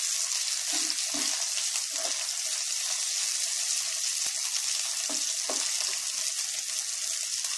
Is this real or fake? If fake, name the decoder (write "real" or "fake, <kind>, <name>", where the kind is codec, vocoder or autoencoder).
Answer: real